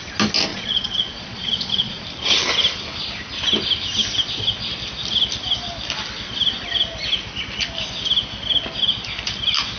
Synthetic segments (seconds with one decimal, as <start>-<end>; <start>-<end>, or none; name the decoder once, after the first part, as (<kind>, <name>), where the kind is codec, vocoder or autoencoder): 0.5-2.0 (vocoder, Vocos)